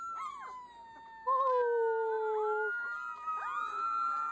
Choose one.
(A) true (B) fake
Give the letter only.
A